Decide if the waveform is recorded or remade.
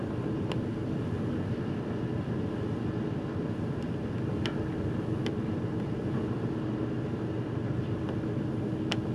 recorded